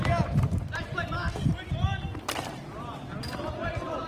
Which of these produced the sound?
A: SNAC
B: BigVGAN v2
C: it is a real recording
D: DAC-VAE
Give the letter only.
C